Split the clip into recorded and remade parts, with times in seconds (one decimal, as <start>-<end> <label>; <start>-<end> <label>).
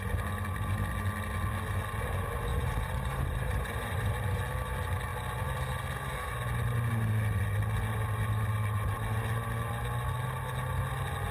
0.0-2.5 recorded; 2.5-4.1 remade; 4.1-11.3 recorded